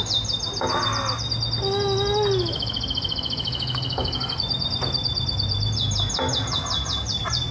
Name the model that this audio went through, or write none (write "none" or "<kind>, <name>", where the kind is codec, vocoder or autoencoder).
none